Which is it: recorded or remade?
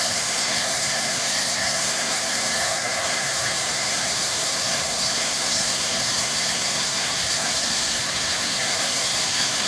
remade